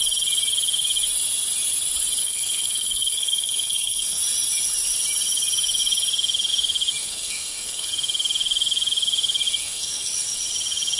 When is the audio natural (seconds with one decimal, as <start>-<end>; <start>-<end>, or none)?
0.0-2.2; 4.2-7.0; 7.9-9.6; 10.1-11.0